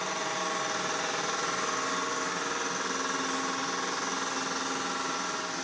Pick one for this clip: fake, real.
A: real